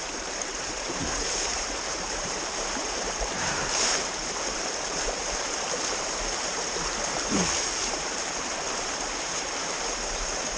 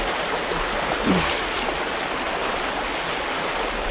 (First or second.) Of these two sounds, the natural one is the second